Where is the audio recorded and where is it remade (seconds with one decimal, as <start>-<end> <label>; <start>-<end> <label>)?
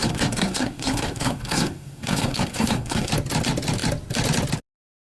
0.0-3.1 remade; 3.1-5.1 recorded